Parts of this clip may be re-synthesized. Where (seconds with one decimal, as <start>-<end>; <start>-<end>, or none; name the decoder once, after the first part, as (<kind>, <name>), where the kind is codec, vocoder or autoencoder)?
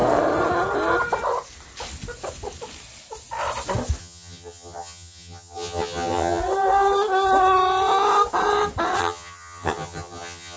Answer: 4.0-6.4 (vocoder, HiFi-GAN); 9.0-10.6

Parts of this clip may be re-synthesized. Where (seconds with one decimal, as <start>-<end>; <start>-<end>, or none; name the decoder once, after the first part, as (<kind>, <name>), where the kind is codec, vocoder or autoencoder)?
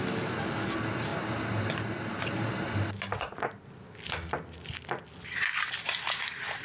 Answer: none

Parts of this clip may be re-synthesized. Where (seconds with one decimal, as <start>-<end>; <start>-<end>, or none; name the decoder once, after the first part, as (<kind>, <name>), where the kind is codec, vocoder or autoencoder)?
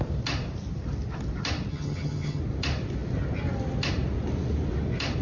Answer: 1.7-2.4 (vocoder, HiFi-GAN)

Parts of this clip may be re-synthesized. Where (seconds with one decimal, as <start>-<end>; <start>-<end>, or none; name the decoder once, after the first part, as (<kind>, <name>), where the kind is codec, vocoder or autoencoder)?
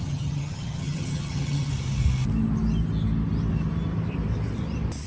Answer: 0.0-1.7 (vocoder, HiFi-GAN)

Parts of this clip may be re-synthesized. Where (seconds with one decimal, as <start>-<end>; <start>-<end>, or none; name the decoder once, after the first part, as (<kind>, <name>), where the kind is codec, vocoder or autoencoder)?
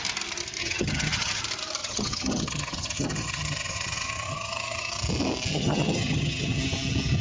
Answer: 0.6-1.4 (vocoder, HiFi-GAN); 1.8-4.9; 5.5-6.6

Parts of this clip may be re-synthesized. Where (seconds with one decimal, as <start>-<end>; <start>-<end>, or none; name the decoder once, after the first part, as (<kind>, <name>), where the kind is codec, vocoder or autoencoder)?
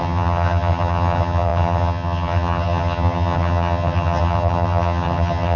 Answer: 0.0-5.6 (vocoder, HiFi-GAN)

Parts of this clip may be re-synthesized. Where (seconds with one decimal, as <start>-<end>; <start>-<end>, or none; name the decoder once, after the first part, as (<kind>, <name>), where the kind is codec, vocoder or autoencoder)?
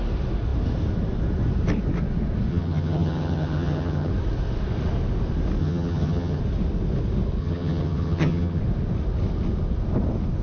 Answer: 2.5-4.1 (vocoder, HiFi-GAN); 5.6-6.4; 7.4-8.6